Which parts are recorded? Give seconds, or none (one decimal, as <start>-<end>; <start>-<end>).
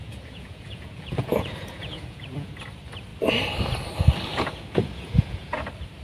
2.5-4.3; 5.6-6.0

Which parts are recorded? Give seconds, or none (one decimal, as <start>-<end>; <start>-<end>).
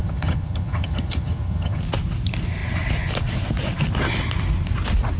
1.8-5.2